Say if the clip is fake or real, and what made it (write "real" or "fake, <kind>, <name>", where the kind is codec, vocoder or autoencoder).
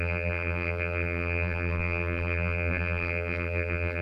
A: fake, vocoder, BigVGAN v2